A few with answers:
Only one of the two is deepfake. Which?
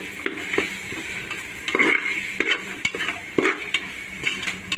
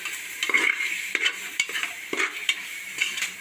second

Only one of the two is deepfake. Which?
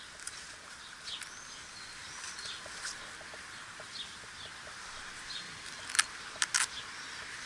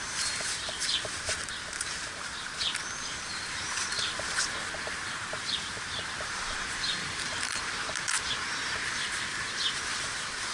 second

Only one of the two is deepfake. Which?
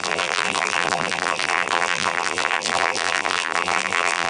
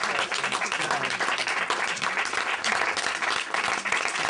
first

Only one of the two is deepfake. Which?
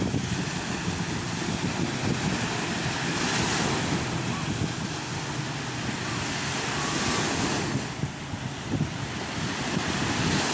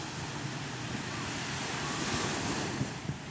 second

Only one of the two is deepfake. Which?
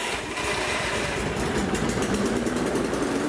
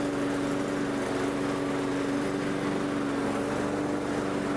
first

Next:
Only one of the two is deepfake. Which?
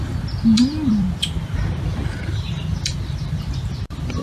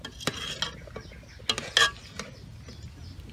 first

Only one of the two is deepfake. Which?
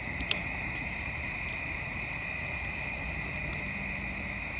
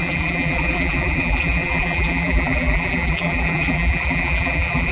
second